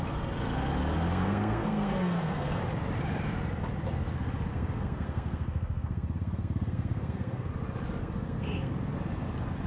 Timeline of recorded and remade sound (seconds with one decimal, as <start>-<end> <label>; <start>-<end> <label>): 0.0-1.1 recorded; 1.1-2.6 remade; 2.6-4.5 recorded; 4.5-7.5 remade; 7.5-8.0 recorded; 8.0-8.7 remade; 8.7-9.7 recorded